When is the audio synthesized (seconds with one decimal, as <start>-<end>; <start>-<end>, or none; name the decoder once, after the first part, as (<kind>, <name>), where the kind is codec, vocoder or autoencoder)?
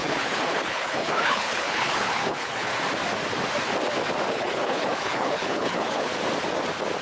0.0-2.7 (codec, HILCodec); 4.3-6.1